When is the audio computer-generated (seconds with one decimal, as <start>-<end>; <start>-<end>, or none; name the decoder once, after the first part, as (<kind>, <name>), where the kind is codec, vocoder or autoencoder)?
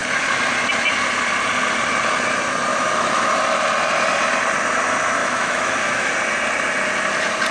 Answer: 2.7-3.4 (autoencoder, DAC-VAE); 5.2-6.1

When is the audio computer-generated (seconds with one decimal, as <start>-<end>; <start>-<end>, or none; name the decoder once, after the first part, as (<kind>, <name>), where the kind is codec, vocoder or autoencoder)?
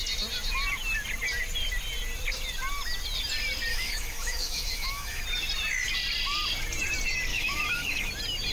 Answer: 3.7-5.2 (autoencoder, DAC-VAE); 7.3-8.1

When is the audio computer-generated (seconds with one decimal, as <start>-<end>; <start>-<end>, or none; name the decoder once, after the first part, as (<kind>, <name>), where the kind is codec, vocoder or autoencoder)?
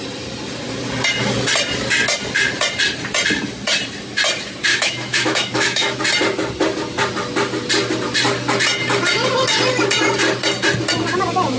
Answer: 4.7-6.0 (autoencoder, DAC-VAE)